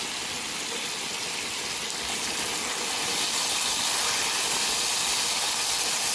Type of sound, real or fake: real